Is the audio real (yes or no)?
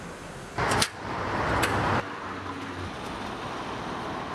yes